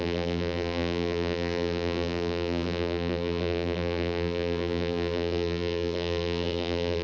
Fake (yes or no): yes